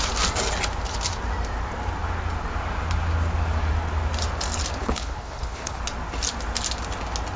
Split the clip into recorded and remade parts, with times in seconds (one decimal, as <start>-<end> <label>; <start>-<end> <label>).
0.0-4.8 recorded; 4.8-5.8 remade; 5.8-7.4 recorded

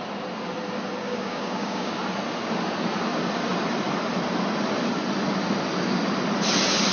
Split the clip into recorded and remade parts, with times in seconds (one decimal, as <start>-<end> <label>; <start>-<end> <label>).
0.0-1.0 recorded; 1.0-1.9 remade; 1.9-6.9 recorded

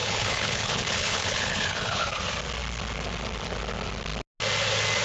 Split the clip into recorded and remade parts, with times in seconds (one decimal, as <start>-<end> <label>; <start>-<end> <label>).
0.0-2.2 remade; 2.2-5.0 recorded

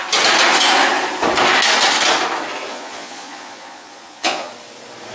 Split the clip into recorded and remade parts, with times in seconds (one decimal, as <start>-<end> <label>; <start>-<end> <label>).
0.0-2.7 recorded; 2.7-4.5 remade; 4.5-5.1 recorded

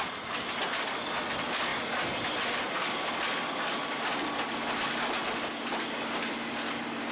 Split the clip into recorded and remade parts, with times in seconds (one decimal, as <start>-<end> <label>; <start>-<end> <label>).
0.0-7.1 recorded

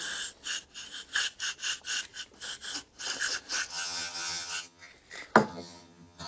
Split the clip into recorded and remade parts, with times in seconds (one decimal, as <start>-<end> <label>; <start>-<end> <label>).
0.0-3.7 recorded; 3.7-4.9 remade; 4.9-5.5 recorded; 5.5-6.3 remade

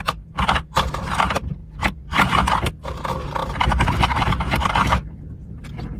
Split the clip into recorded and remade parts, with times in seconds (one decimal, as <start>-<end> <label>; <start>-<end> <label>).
0.0-1.6 remade; 1.6-2.9 recorded; 2.9-6.0 remade